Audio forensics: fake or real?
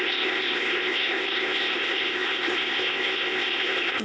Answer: fake